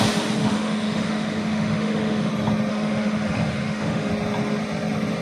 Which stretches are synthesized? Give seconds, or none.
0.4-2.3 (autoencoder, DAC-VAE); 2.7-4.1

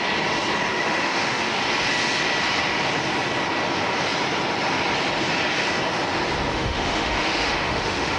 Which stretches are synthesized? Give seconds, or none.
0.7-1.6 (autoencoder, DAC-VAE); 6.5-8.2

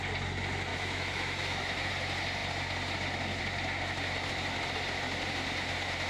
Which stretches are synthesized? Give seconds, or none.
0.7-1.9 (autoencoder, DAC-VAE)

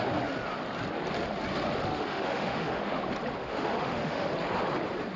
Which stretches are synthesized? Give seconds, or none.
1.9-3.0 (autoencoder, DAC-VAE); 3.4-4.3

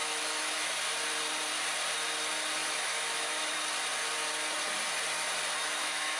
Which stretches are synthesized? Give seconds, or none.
0.0-0.7 (autoencoder, DAC-VAE); 2.6-3.5; 5.6-6.2

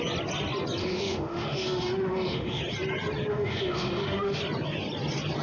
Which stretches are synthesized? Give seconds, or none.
0.8-2.6 (autoencoder, DAC-VAE); 3.3-4.4

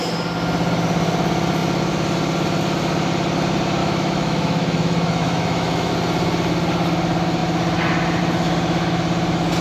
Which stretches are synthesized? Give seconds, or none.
3.8-5.9 (autoencoder, DAC-VAE)